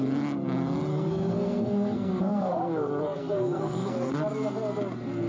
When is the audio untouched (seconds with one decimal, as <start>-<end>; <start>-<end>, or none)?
0.0-0.9; 4.1-5.3